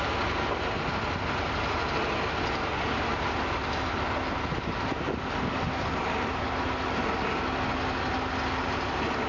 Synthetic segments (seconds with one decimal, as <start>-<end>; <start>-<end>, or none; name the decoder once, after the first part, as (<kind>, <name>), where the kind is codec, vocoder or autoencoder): none